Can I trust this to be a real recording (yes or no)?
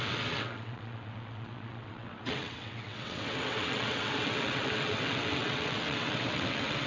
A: no